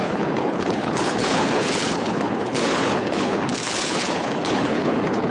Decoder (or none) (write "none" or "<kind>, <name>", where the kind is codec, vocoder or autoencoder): codec, HILCodec